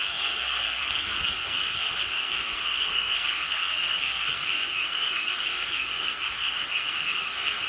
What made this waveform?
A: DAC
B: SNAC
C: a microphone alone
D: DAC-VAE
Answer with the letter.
B